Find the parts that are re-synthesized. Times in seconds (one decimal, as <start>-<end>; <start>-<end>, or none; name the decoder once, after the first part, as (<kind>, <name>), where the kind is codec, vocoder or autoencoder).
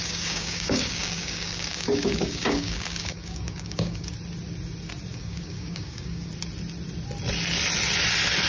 0.0-4.1 (codec, DAC); 5.1-6.3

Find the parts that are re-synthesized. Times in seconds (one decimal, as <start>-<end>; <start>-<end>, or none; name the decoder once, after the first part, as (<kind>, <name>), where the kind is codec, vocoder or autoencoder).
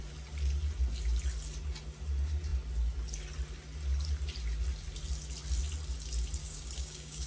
6.4-7.3 (codec, DAC)